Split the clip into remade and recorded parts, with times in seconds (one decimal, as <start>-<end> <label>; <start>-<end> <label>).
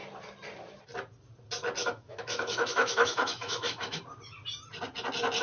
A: 0.0-1.8 recorded; 1.8-4.0 remade; 4.0-5.4 recorded